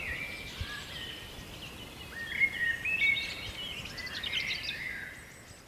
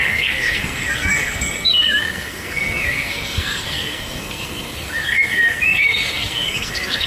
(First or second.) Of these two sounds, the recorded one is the first